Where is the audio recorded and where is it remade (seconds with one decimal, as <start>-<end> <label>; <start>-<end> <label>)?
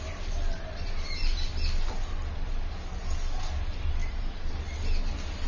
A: 0.0-4.0 recorded; 4.0-4.9 remade; 4.9-5.5 recorded